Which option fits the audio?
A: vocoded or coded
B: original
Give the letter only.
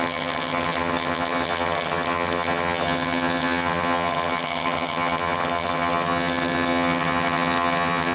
A